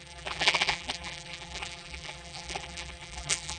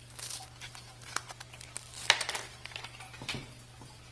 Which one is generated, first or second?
first